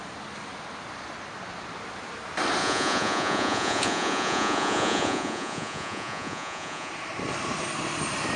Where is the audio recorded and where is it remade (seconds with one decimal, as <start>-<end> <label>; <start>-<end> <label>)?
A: 0.0-2.6 recorded; 2.6-6.9 remade; 6.9-8.4 recorded